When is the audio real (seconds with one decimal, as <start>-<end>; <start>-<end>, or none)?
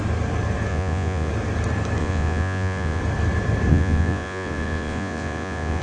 0.0-0.7; 1.3-2.0; 3.0-3.7